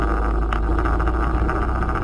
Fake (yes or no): no